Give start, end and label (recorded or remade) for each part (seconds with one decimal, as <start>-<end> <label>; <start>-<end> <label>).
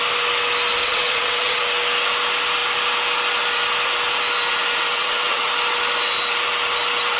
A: 0.0-0.8 recorded; 0.8-1.6 remade; 1.6-4.9 recorded; 4.9-5.5 remade; 5.5-7.2 recorded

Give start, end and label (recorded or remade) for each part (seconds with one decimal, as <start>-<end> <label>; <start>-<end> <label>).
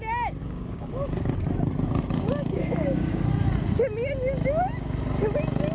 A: 0.0-0.4 recorded; 0.4-0.9 remade; 0.9-2.6 recorded; 2.6-3.3 remade; 3.3-5.7 recorded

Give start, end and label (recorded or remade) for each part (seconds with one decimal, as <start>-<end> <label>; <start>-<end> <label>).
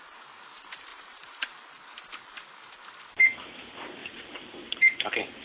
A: 0.0-0.9 recorded; 0.9-1.9 remade; 1.9-4.0 recorded; 4.0-4.8 remade; 4.8-5.4 recorded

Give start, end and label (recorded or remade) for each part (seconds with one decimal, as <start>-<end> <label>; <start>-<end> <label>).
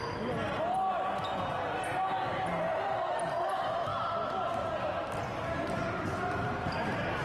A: 0.0-7.2 recorded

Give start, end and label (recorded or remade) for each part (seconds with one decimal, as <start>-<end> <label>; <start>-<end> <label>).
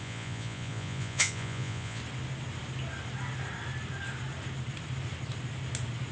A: 0.0-2.0 remade; 2.0-6.1 recorded